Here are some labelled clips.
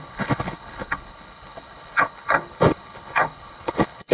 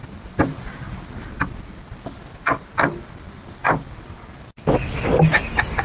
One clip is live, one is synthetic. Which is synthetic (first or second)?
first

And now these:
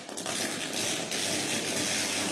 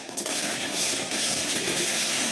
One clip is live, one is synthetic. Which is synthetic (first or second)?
second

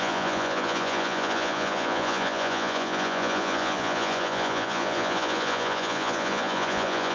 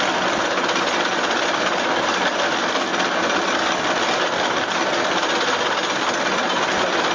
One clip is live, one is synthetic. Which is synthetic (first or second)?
first